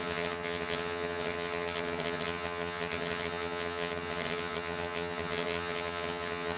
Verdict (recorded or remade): remade